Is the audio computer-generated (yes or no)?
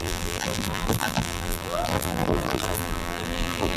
yes